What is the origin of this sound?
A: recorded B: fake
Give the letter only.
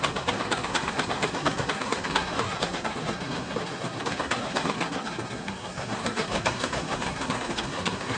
B